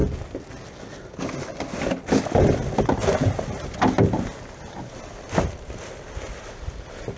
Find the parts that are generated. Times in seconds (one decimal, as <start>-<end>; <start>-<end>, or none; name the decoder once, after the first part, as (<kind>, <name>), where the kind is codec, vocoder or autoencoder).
none